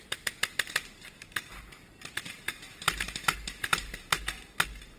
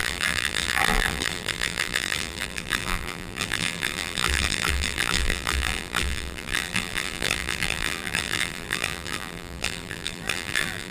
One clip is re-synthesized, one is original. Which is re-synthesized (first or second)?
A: second